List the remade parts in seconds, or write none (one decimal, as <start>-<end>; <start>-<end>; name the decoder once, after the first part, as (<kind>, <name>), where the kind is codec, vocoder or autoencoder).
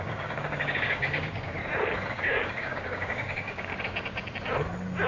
0.0-1.6 (codec, DAC); 2.1-3.7